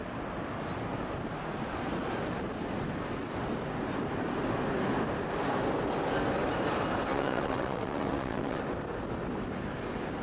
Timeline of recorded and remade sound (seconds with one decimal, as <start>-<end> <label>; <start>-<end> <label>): 0.0-7.1 recorded; 7.1-8.6 remade; 8.6-10.2 recorded